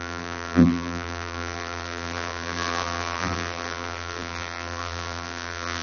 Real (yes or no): no